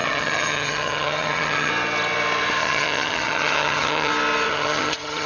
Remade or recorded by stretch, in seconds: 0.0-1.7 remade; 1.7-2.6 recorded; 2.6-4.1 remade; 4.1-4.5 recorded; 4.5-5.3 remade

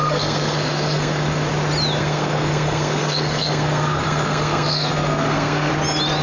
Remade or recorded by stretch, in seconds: 0.0-1.5 remade; 1.5-2.0 recorded; 2.0-5.7 remade; 5.7-6.2 recorded

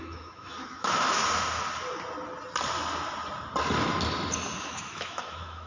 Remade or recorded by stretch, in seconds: 0.0-1.2 remade; 1.2-4.6 recorded; 4.6-5.7 remade